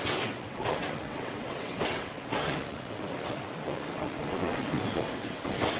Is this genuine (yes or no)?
no